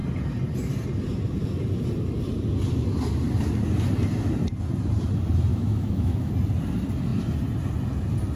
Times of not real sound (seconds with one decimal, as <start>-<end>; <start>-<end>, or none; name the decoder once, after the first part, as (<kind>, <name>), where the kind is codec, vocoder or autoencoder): 5.5-6.3 (autoencoder, DAC-VAE)